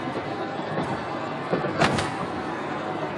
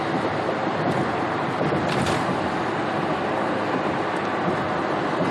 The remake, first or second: first